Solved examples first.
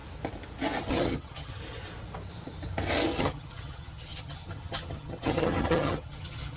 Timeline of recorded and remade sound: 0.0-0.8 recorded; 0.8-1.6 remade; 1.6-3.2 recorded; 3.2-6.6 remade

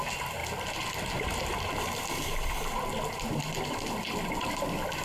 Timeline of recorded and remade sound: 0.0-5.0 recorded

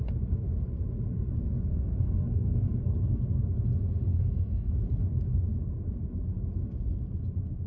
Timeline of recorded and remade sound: 0.0-1.7 recorded; 1.7-3.2 remade; 3.2-4.1 recorded; 4.1-4.7 remade; 4.7-7.7 recorded